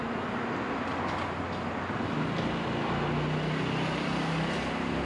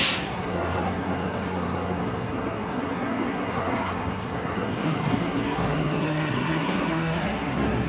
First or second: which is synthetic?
second